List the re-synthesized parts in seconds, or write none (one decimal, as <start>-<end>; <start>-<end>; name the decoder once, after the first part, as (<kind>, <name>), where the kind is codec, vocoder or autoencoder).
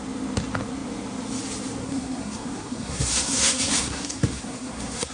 1.8-5.1 (codec, SNAC)